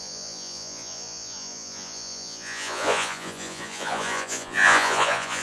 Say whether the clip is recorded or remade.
remade